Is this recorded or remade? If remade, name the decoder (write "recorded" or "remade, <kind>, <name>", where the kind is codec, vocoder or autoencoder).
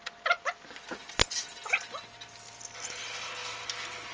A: recorded